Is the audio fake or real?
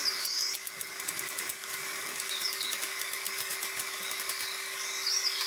fake